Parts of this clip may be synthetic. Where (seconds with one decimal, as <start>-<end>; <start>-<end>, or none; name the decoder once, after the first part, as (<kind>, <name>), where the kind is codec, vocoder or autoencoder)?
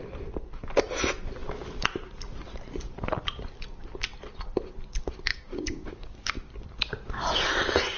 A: 5.3-6.3 (codec, DAC)